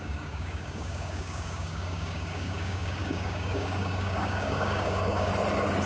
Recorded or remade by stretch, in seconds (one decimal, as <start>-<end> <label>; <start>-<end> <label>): 0.0-5.3 remade; 5.3-5.9 recorded